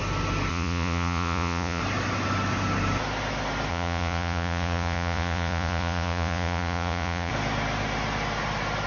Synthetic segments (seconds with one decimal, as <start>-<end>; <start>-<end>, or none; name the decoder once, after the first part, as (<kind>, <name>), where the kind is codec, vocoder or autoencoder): 0.5-1.8 (vocoder, Vocos); 3.7-7.3